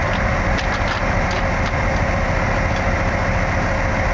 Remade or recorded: recorded